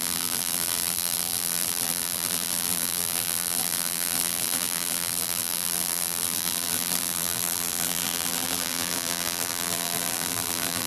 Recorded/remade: remade